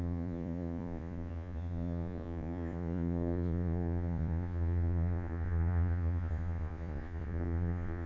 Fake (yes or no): yes